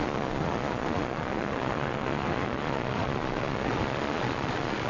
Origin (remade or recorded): remade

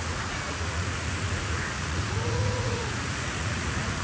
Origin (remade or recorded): remade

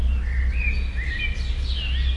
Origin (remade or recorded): recorded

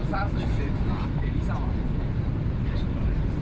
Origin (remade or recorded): recorded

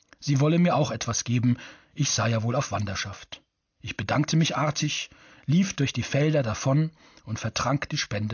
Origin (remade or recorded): recorded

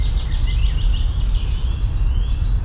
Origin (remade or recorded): recorded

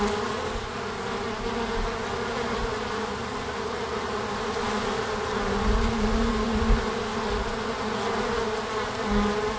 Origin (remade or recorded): recorded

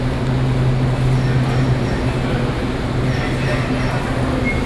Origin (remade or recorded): recorded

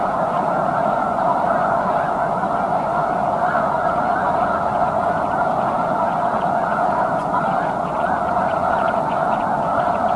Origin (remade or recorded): remade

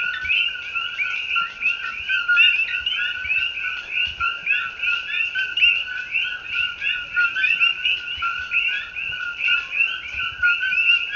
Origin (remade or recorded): recorded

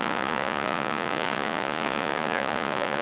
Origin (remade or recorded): remade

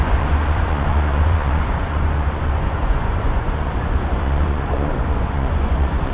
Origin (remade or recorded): remade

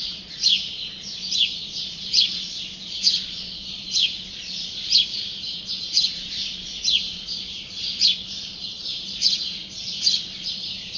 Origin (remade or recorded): remade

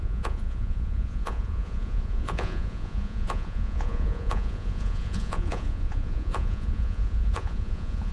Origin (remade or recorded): remade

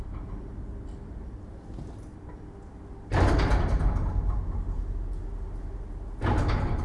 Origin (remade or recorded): recorded